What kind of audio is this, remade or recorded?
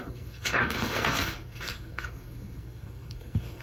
remade